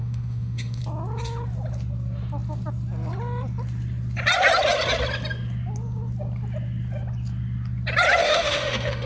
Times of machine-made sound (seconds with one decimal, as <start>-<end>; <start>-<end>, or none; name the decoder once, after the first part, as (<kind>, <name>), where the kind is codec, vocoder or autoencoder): 0.0-0.8 (autoencoder, DAC-VAE); 8.2-9.1